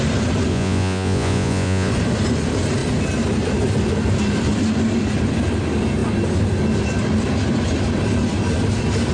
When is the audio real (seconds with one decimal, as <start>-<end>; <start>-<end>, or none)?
0.0-0.5; 1.9-9.1